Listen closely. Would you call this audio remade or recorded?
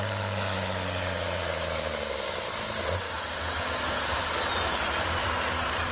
recorded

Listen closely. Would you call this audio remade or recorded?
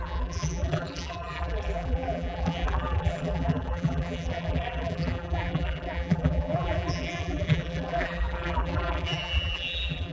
remade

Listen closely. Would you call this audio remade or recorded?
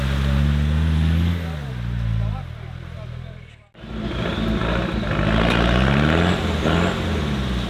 recorded